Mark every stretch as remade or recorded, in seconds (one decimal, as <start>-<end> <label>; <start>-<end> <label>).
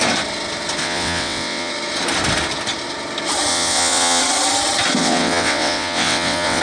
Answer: 0.0-0.8 recorded; 0.8-1.7 remade; 1.7-3.5 recorded; 3.5-4.2 remade; 4.2-5.0 recorded; 5.0-6.6 remade